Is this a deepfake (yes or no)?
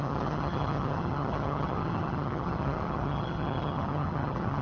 yes